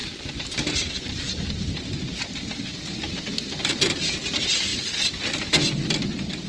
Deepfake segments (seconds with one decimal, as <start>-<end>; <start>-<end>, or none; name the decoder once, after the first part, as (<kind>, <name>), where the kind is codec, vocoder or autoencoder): 0.0-3.9 (vocoder, BigVGAN v2)